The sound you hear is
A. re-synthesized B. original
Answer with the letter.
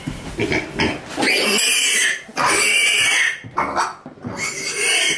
B